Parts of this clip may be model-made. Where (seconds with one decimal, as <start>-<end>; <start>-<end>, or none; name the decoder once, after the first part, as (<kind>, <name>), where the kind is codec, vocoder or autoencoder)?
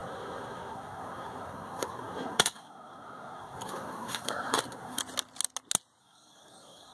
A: 0.0-5.0 (codec, SNAC); 6.0-6.9